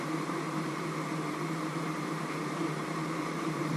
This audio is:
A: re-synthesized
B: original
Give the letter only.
A